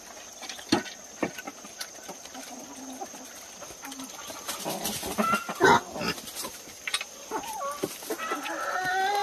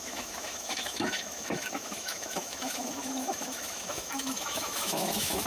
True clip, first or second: first